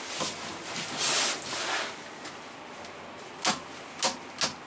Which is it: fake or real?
real